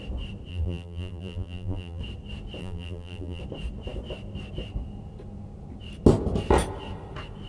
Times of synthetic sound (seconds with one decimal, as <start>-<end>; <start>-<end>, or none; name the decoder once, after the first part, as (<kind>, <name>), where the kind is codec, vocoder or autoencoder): 0.5-2.0 (vocoder, BigVGAN v2); 2.6-3.4